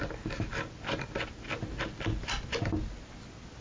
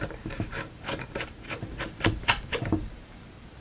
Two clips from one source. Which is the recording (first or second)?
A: first